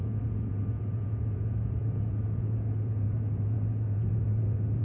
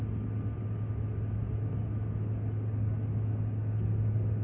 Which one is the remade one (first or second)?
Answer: first